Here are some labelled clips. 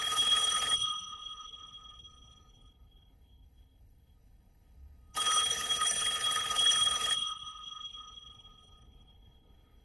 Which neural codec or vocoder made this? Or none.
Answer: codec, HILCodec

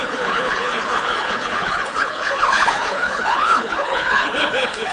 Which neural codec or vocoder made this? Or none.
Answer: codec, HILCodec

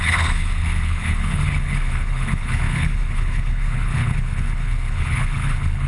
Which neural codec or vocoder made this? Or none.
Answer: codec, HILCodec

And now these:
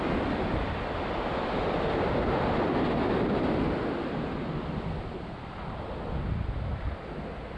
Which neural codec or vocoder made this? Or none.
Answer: none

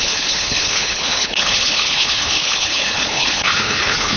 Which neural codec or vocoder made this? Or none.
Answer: codec, HILCodec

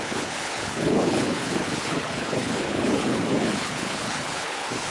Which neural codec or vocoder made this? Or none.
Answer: codec, HILCodec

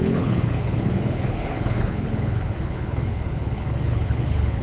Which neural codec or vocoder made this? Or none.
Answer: codec, HILCodec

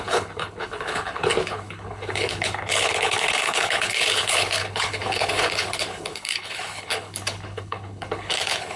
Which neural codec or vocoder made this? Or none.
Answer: codec, HILCodec